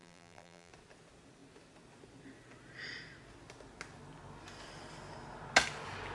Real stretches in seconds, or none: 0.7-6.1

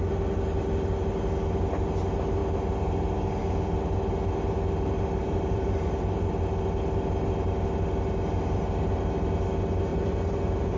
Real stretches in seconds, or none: 0.0-5.2; 6.3-9.9

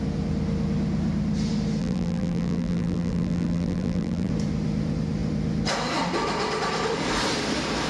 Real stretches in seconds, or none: 0.0-1.8; 4.3-7.9

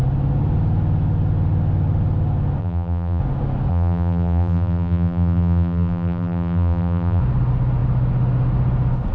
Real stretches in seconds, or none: 0.0-2.6; 3.2-3.7; 7.2-9.1

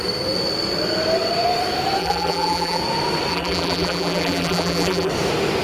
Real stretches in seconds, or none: 0.0-2.0; 2.8-3.3; 5.1-5.6

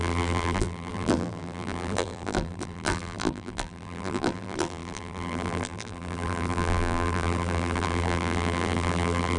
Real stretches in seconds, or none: none

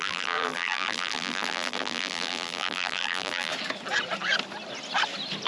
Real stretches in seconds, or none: 3.5-5.5

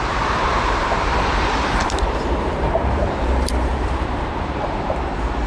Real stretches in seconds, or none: none